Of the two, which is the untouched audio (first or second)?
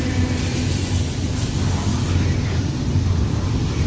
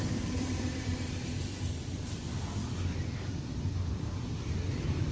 first